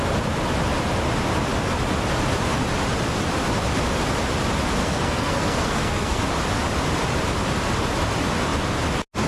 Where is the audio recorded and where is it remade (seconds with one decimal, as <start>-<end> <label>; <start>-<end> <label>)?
0.0-4.8 recorded; 4.8-6.2 remade; 6.2-9.3 recorded